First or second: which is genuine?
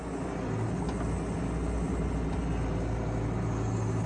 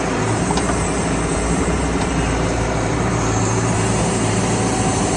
first